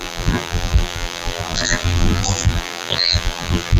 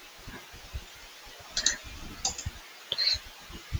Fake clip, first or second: first